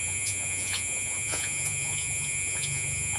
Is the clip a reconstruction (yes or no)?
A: yes